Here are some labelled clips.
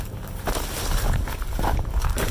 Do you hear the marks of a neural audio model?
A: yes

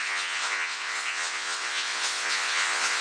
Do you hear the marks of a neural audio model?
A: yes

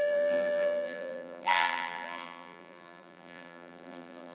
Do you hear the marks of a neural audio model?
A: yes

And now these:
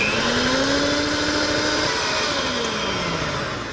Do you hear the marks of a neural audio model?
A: no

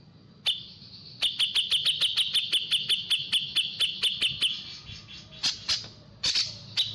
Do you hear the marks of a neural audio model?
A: no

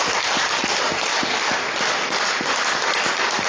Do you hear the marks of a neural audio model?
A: no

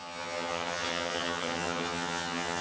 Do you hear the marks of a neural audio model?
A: yes